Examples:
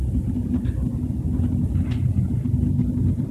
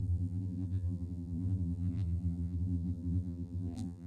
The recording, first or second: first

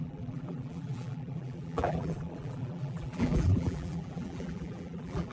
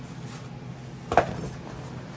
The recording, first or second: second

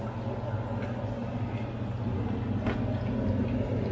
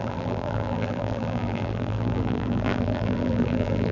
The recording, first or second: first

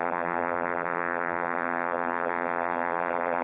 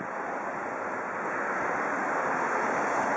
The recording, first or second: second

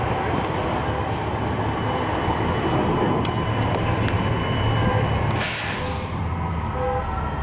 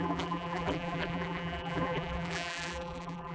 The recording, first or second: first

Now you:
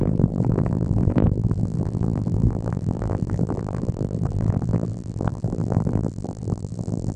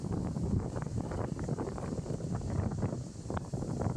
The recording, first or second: second